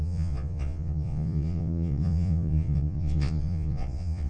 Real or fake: fake